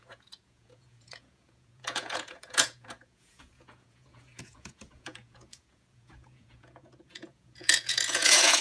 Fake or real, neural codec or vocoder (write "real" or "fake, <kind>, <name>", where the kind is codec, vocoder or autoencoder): fake, vocoder, Vocos